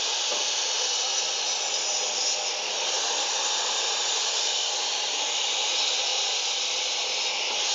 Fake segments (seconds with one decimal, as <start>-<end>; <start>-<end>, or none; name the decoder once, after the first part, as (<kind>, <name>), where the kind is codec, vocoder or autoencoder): 6.1-6.9 (vocoder, BigVGAN v2)